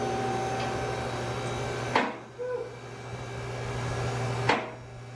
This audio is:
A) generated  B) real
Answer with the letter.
B